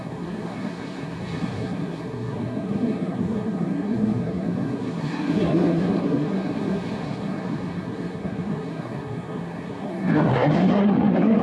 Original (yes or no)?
no